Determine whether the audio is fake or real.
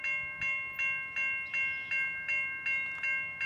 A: real